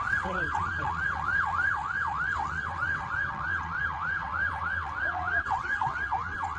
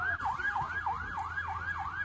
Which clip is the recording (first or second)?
second